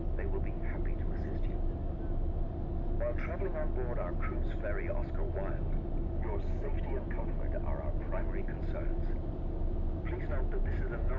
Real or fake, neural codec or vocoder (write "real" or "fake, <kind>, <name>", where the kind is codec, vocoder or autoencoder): real